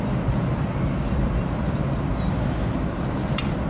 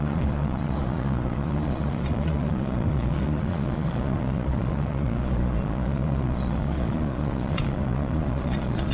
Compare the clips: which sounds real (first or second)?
first